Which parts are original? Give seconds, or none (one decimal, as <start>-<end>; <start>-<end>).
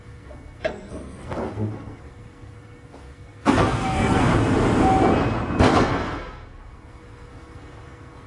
4.3-5.7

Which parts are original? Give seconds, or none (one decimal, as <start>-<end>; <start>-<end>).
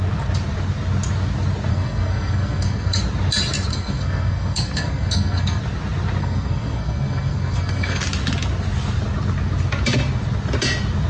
0.0-1.7; 3.0-3.7; 5.6-6.2; 8.0-11.1